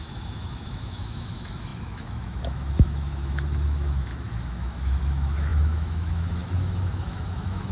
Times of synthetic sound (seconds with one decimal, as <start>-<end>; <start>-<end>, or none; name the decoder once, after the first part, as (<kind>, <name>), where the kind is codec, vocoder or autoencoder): 0.0-7.7 (autoencoder, DAC-VAE)